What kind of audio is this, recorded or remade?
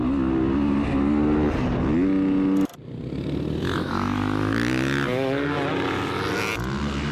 recorded